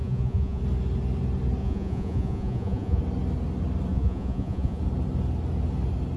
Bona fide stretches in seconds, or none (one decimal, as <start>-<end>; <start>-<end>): 0.6-1.6; 3.0-3.9; 4.8-6.2